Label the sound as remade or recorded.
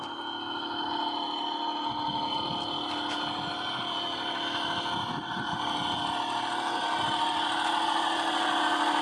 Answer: recorded